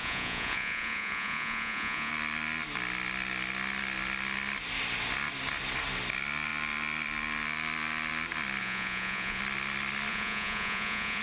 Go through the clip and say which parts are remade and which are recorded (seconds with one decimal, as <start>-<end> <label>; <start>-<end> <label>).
0.0-2.1 remade; 2.1-8.6 recorded; 8.6-9.4 remade; 9.4-10.1 recorded; 10.1-11.2 remade

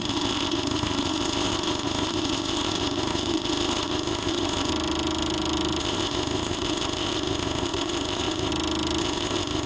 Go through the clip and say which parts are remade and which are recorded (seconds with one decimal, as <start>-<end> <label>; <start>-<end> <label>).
0.0-4.7 remade; 4.7-5.8 recorded; 5.8-8.5 remade; 8.5-9.0 recorded; 9.0-9.7 remade

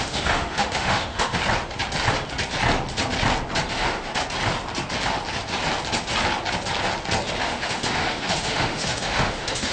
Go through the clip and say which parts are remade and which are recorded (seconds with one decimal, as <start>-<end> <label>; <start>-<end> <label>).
0.0-1.4 remade; 1.4-3.7 recorded; 3.7-4.2 remade; 4.2-7.4 recorded; 7.4-9.7 remade

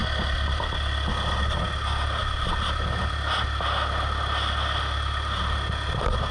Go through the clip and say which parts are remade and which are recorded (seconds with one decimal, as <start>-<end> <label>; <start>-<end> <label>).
0.0-6.3 recorded

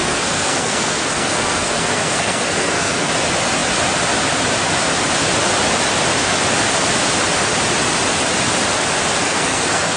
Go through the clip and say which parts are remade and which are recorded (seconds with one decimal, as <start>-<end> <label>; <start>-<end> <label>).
0.0-3.1 remade; 3.1-9.2 recorded; 9.2-10.0 remade